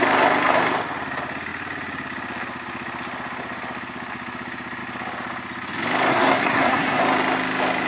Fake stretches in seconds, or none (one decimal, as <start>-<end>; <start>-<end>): 6.1-7.0